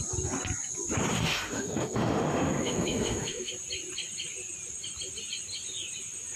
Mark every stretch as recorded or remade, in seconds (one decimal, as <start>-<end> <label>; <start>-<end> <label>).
0.0-1.1 recorded; 1.1-3.5 remade; 3.5-6.4 recorded